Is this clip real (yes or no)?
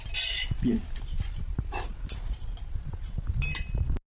yes